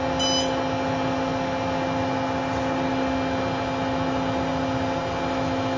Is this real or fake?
real